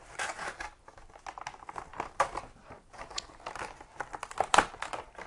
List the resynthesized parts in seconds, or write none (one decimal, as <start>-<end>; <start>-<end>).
none